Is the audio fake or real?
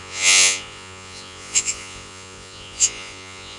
fake